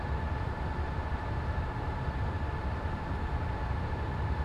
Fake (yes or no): yes